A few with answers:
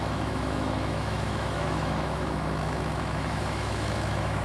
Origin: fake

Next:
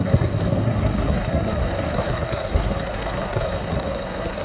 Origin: fake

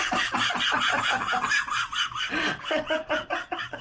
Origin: real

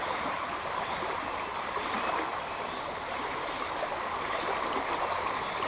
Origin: real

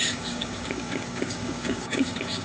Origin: fake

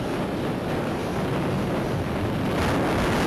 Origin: real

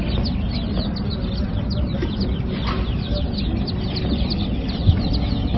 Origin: real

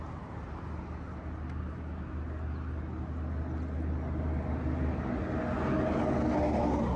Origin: real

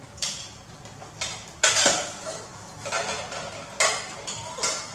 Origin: real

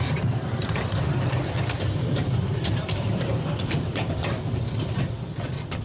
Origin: fake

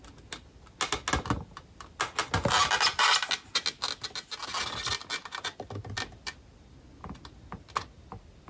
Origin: real